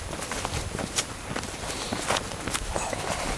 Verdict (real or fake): real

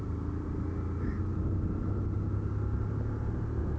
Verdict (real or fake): real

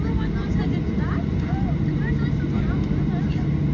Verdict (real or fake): real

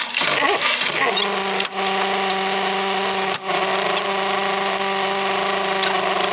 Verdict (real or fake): real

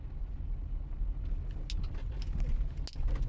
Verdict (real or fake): real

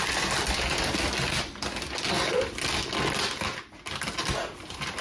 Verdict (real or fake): real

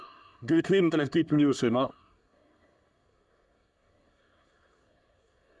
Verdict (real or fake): fake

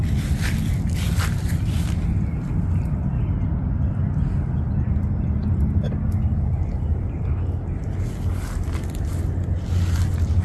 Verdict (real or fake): real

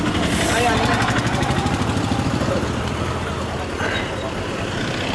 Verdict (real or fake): real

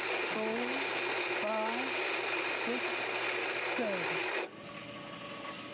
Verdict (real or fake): real